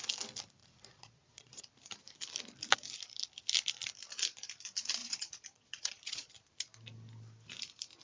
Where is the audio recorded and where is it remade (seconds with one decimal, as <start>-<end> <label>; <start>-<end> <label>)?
0.0-0.6 recorded; 0.6-1.6 remade; 1.6-5.0 recorded; 5.0-6.3 remade; 6.3-8.0 recorded